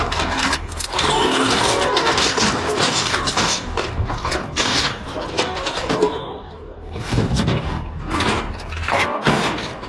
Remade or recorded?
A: remade